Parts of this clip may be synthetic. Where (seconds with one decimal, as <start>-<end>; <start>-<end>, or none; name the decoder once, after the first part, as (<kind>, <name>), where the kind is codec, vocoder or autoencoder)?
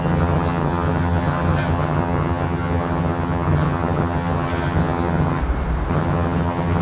0.0-5.4 (vocoder, HiFi-GAN); 5.9-6.8